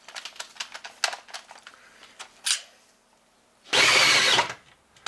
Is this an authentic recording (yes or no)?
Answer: yes